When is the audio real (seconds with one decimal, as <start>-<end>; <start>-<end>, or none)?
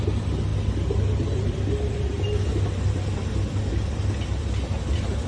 0.0-5.3